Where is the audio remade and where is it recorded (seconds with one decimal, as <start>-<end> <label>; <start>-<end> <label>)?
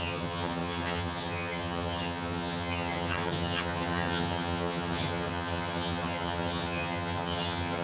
0.0-7.8 remade